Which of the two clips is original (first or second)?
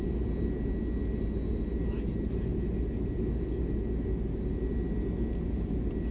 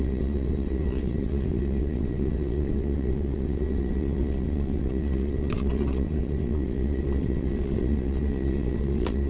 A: first